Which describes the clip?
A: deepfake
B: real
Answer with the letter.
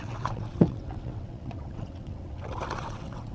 A